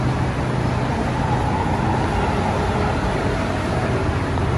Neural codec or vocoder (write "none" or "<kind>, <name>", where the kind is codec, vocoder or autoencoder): none